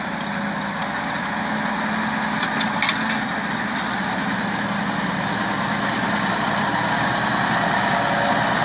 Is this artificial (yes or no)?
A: no